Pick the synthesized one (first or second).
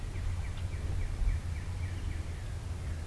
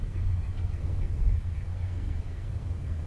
second